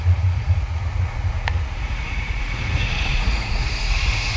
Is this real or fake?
fake